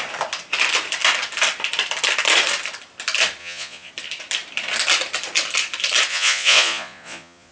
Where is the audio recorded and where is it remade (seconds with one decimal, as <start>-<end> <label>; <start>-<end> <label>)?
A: 0.0-3.4 recorded; 3.4-3.9 remade; 3.9-6.1 recorded; 6.1-7.5 remade